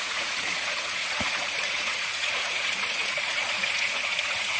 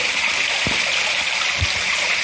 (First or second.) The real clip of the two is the second